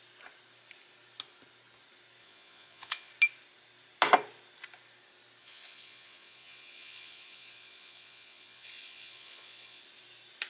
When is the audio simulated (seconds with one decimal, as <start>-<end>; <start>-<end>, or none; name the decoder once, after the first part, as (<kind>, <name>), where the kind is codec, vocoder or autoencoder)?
2.2-3.1 (vocoder, Vocos); 5.4-9.8